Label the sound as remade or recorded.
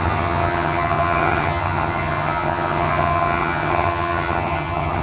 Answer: remade